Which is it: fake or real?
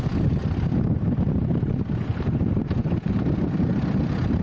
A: real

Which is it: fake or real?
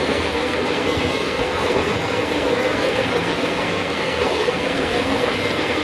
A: fake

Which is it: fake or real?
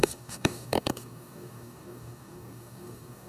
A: fake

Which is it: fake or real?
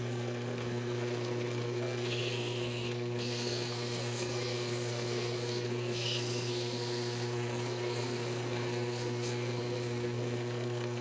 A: fake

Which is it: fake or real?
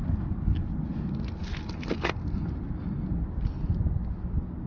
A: real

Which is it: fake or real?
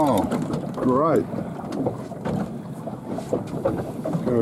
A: real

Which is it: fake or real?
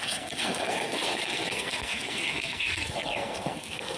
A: fake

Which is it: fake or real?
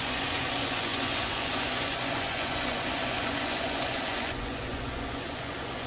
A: fake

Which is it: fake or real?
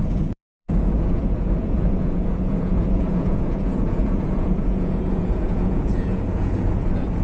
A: fake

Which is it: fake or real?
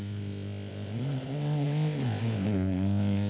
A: fake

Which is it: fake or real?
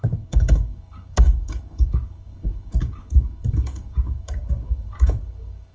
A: fake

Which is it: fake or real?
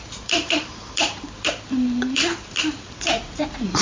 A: fake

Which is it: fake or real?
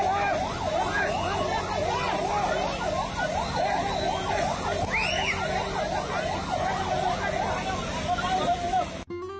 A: real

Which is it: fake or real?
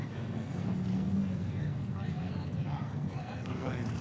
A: fake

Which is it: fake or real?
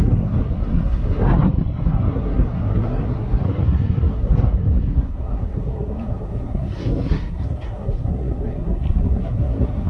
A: fake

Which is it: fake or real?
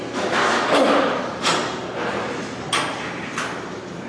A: real